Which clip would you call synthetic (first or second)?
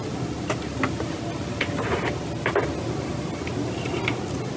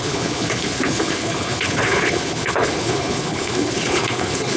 second